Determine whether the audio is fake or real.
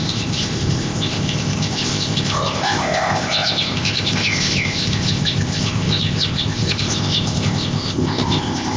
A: fake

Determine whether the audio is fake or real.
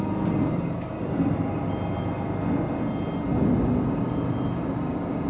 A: real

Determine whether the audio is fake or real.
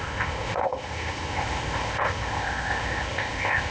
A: fake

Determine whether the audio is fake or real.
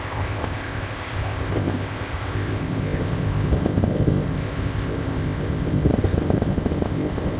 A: fake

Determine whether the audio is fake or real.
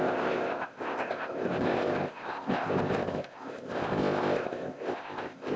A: fake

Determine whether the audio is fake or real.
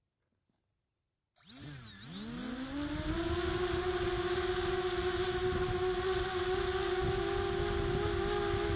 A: real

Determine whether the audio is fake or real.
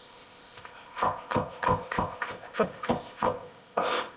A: fake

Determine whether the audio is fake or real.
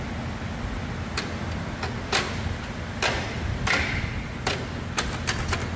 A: real